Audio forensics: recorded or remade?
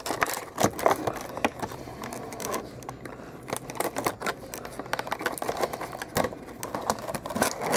recorded